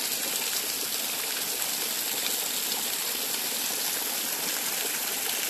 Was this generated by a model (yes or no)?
no